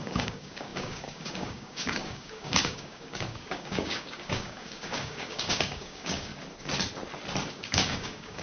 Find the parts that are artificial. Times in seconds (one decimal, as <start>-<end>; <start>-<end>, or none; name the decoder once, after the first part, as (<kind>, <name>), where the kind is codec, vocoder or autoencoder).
0.0-6.3 (codec, DAC); 7.5-8.4